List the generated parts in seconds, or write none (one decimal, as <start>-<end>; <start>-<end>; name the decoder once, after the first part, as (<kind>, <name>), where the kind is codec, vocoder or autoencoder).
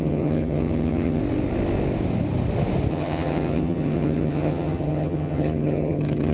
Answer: 0.0-1.2 (vocoder, HiFi-GAN); 2.9-6.3